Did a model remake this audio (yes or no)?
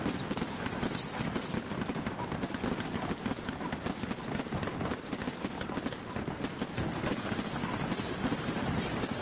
no